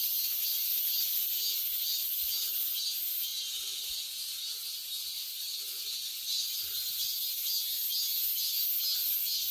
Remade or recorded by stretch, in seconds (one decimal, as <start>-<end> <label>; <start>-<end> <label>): 0.0-9.5 recorded